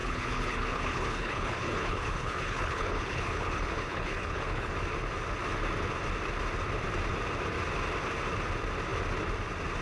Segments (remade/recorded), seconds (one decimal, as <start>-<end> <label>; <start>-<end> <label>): 0.0-4.7 remade; 4.7-9.8 recorded